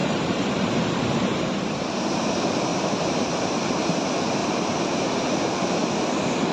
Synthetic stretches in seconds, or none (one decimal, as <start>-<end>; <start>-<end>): 0.0-2.3; 2.7-3.8; 4.4-5.7